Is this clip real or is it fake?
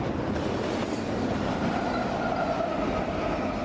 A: real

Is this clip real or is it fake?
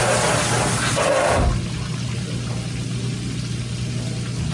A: real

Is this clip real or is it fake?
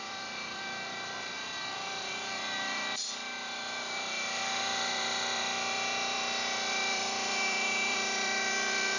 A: fake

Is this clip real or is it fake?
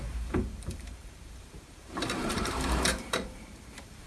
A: fake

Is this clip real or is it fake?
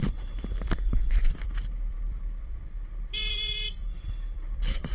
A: fake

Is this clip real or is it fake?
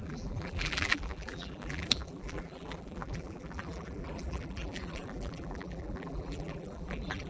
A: fake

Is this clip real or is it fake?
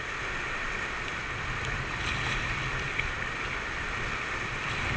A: real